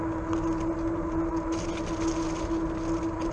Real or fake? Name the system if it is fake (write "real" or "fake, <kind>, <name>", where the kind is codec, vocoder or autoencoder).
real